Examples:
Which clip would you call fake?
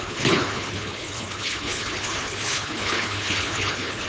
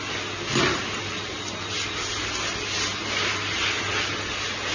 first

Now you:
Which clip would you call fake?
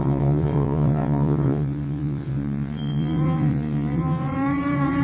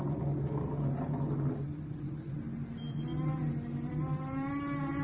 first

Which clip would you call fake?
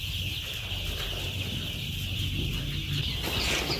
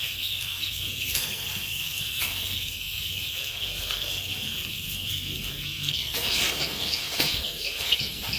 second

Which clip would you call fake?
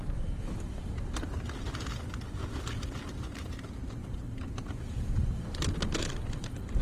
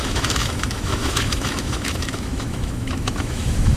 second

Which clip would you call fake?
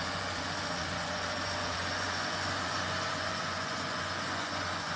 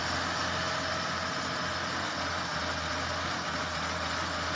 first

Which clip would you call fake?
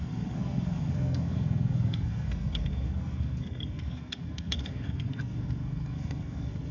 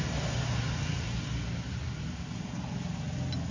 first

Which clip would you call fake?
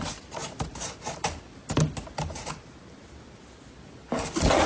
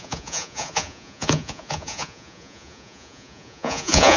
second